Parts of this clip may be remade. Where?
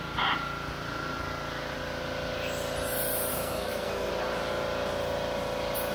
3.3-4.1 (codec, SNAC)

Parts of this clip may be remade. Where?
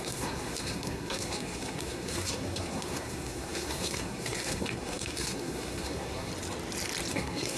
0.0-6.3 (codec, SNAC); 7.1-7.6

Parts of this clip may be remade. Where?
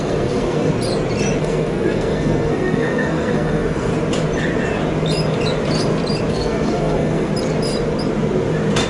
0.0-0.7 (codec, SNAC); 1.4-3.9; 6.3-7.3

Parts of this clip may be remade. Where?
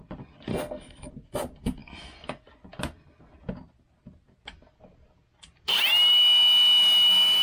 0.5-1.1 (codec, SNAC)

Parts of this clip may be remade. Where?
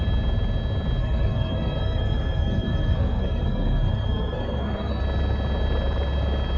1.0-5.0 (codec, SNAC)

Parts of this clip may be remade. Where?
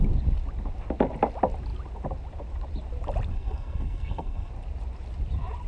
3.3-4.5 (codec, SNAC)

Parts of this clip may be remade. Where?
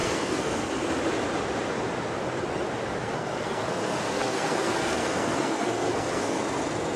0.0-0.6 (codec, SNAC); 3.0-6.4